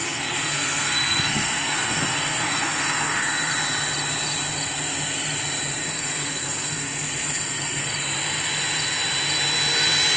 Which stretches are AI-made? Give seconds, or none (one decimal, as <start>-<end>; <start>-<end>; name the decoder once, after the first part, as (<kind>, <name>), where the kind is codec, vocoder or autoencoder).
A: 0.0-3.5 (codec, SNAC); 5.8-7.9